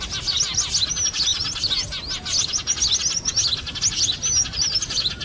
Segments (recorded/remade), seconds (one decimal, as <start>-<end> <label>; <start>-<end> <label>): 0.0-5.2 recorded